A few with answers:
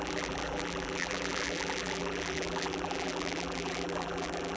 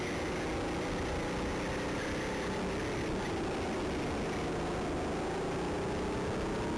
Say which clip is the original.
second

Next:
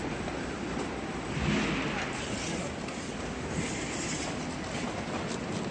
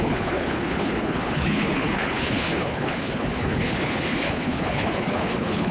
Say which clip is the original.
first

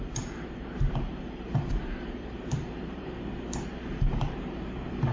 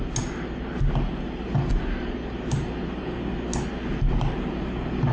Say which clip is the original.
second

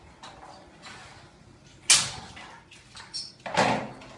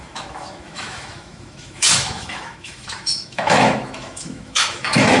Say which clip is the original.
first